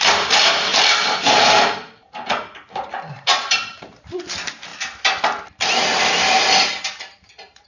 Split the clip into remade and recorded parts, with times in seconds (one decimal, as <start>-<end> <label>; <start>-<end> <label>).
0.0-4.7 remade; 4.7-7.0 recorded; 7.0-7.7 remade